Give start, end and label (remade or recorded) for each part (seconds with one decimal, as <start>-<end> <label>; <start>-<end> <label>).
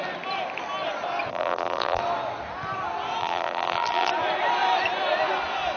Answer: 0.0-1.3 recorded; 1.3-2.0 remade; 2.0-3.2 recorded; 3.2-4.1 remade; 4.1-5.8 recorded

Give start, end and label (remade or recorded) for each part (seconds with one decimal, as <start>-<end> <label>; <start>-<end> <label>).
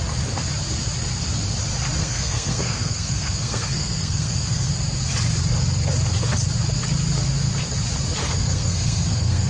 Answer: 0.0-2.0 recorded; 2.0-4.7 remade; 4.7-8.2 recorded; 8.2-9.5 remade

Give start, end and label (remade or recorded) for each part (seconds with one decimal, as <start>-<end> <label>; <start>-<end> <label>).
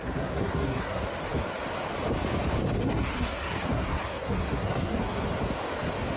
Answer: 0.0-1.0 remade; 1.0-2.8 recorded; 2.8-5.2 remade; 5.2-6.2 recorded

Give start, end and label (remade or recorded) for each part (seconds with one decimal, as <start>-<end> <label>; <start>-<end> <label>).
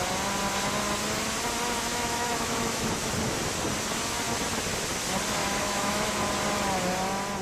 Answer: 0.0-1.9 recorded; 1.9-3.1 remade; 3.1-5.4 recorded; 5.4-6.1 remade; 6.1-7.4 recorded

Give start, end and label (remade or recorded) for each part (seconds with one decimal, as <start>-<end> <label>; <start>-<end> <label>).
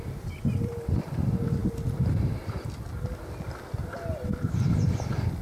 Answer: 0.0-1.6 remade; 1.6-4.3 recorded; 4.3-5.4 remade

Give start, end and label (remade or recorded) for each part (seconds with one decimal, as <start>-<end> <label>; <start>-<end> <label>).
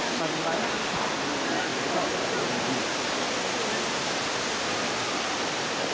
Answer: 0.0-5.9 recorded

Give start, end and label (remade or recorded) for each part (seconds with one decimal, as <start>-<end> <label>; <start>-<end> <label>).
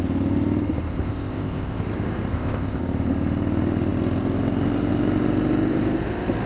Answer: 0.0-0.9 recorded; 0.9-1.8 remade; 1.8-2.3 recorded; 2.3-2.8 remade; 2.8-6.5 recorded